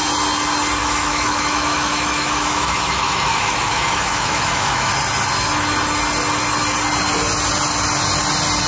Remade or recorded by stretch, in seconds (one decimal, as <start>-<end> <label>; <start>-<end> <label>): 0.0-0.8 recorded; 0.8-4.9 remade; 4.9-8.7 recorded